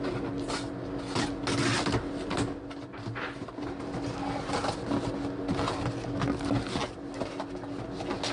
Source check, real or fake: real